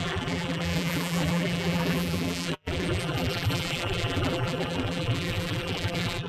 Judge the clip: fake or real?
fake